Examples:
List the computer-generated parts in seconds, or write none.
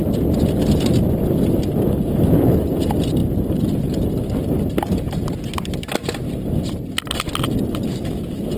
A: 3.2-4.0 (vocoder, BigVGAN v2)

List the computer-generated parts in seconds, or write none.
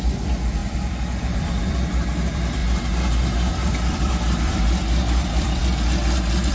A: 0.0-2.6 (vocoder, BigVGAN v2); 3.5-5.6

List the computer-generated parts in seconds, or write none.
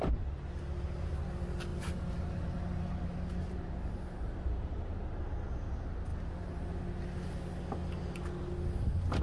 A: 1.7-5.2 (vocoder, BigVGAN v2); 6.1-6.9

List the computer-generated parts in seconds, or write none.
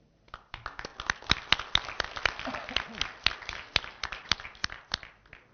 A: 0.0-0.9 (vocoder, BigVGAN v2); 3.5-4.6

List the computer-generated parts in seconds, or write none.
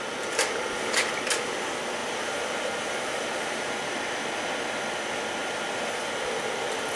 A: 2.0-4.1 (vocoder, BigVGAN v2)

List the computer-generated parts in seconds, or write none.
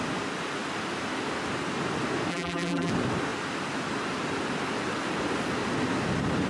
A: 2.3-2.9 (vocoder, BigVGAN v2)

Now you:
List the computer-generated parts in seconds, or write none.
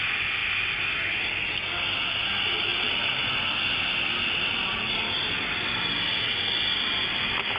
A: 2.7-3.3 (vocoder, BigVGAN v2)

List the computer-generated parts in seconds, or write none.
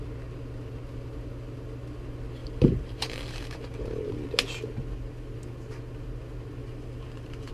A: 2.4-4.1 (vocoder, BigVGAN v2); 6.6-7.5